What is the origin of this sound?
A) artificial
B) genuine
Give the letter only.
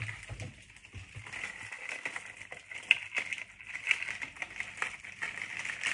B